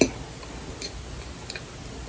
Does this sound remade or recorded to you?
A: recorded